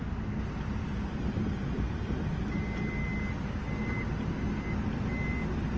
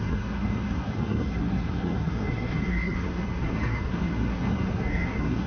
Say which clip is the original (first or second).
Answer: first